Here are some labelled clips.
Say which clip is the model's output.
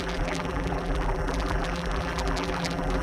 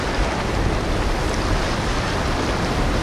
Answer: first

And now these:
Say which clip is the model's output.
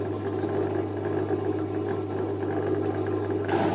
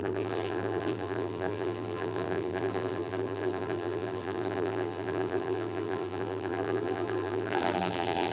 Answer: second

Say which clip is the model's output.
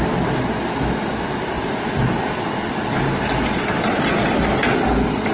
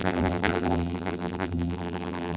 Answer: second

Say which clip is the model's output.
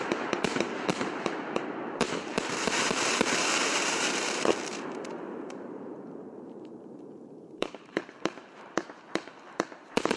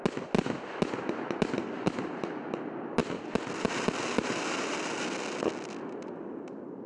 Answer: first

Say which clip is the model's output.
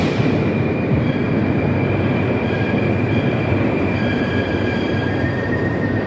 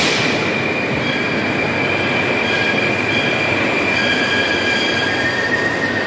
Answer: first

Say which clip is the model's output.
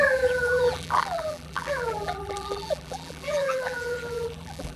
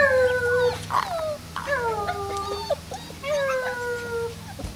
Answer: first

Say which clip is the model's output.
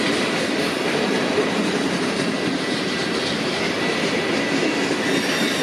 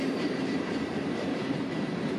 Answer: second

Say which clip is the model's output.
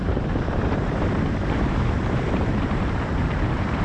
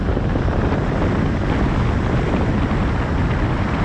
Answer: first